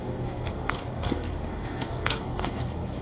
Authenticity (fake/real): fake